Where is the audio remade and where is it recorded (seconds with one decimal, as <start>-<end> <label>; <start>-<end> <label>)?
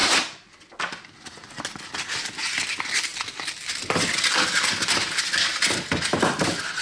0.0-6.8 recorded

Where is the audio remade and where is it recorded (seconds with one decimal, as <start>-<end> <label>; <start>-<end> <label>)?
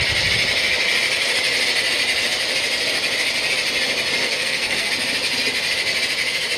0.0-4.2 recorded; 4.2-4.9 remade; 4.9-6.6 recorded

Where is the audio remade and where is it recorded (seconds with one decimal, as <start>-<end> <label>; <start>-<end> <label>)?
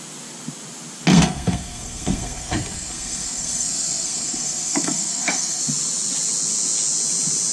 0.0-1.1 recorded; 1.1-5.6 remade; 5.6-7.5 recorded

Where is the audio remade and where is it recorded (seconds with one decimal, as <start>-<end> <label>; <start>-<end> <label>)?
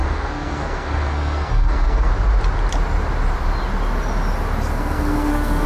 0.0-2.1 remade; 2.1-4.7 recorded; 4.7-5.7 remade